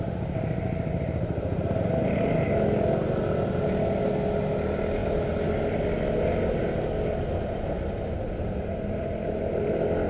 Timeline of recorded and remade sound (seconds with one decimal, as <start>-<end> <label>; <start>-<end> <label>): 0.0-10.1 recorded